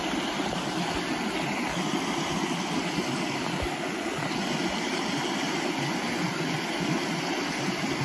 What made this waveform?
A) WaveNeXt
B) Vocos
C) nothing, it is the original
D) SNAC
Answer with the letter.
C